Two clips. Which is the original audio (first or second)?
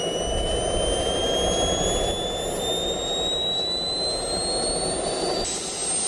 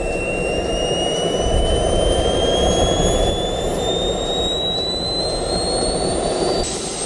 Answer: first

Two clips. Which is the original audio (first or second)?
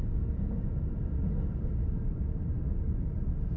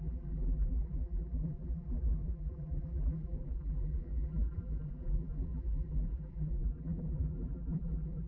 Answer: first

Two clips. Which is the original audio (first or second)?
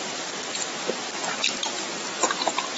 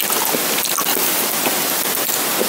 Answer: second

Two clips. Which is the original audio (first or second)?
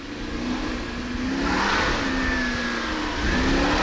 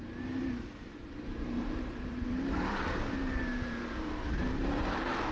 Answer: first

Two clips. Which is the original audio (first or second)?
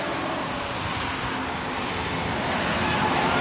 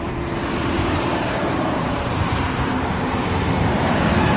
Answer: first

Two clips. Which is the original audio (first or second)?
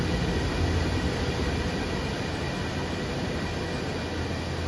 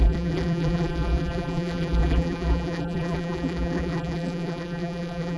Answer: first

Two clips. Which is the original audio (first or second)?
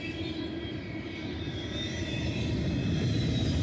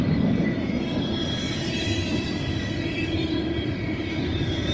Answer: first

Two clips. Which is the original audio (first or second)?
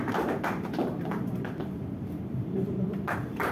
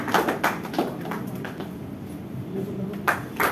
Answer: second